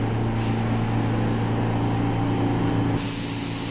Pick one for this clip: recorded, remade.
recorded